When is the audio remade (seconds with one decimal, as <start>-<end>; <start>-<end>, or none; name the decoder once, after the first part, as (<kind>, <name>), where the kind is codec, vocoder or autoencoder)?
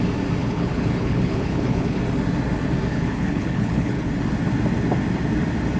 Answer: 0.4-2.0 (codec, HILCodec); 2.9-4.1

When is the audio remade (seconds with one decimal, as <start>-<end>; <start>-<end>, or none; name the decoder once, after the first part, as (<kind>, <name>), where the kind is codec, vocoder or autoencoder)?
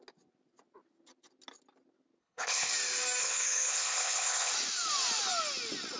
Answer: 2.2-2.7 (codec, HILCodec); 3.2-4.5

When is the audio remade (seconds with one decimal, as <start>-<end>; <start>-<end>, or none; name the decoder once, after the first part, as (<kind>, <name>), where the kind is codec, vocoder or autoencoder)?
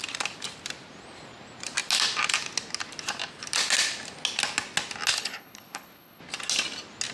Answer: 5.1-6.2 (codec, HILCodec)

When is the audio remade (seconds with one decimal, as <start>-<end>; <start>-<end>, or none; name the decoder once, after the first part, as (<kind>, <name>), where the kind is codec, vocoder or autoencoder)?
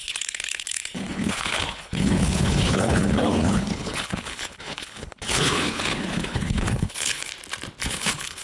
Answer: 0.0-7.3 (codec, HILCodec); 7.8-8.4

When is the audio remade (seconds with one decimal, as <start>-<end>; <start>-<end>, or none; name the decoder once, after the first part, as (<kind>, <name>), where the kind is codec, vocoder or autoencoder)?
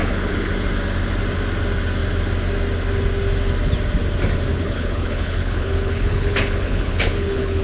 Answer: 0.0-0.5 (codec, HILCodec); 4.5-7.6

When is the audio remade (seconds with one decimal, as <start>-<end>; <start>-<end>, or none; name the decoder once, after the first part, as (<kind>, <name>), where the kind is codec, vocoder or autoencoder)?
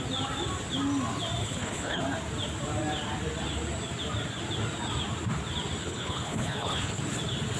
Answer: 1.4-2.0 (codec, HILCodec); 5.8-7.0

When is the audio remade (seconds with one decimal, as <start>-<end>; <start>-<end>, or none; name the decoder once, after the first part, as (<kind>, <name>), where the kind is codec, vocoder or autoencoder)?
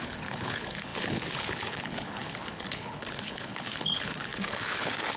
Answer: 0.0-5.2 (codec, HILCodec)